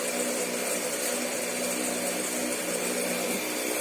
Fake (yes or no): no